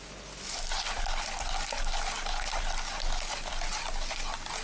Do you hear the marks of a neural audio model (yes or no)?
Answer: no